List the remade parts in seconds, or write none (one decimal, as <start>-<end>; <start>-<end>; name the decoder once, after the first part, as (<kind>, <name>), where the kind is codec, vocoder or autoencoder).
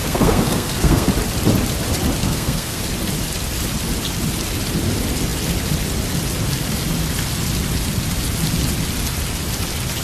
0.0-1.1 (codec, SNAC); 2.2-2.8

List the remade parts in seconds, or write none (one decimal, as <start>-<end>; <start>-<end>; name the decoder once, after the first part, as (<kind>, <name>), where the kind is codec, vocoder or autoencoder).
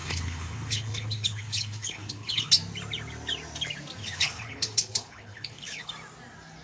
0.0-2.5 (codec, HILCodec); 4.0-5.9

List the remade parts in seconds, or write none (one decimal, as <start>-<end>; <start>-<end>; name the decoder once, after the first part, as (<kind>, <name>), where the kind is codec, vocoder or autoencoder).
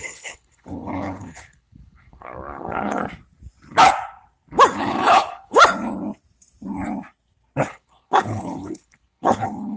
0.0-3.0 (codec, HILCodec); 4.8-5.6; 7.7-9.8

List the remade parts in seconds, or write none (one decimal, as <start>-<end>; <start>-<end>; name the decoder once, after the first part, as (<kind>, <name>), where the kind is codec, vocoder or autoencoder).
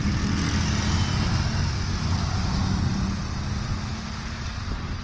none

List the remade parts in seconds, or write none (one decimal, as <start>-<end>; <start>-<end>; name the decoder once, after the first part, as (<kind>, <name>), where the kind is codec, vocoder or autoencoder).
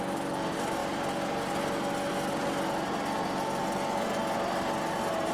none